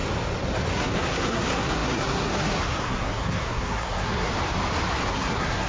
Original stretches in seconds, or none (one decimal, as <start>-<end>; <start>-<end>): 0.0-0.7; 4.3-5.1